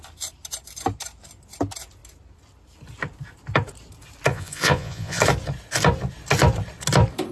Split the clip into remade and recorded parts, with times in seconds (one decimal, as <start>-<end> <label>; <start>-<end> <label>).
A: 0.0-4.3 recorded; 4.3-5.2 remade; 5.2-7.3 recorded